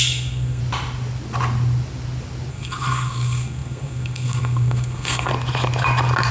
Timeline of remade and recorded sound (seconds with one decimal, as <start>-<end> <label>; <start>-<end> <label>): 0.0-0.6 remade; 0.6-2.5 recorded; 2.5-5.3 remade; 5.3-6.3 recorded